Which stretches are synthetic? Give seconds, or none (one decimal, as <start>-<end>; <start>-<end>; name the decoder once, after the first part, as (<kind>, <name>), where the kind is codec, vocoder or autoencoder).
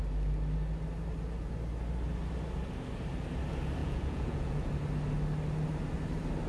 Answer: 3.8-4.7 (vocoder, Vocos)